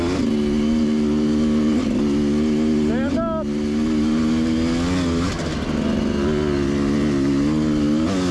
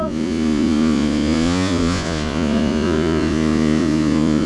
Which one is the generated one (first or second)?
second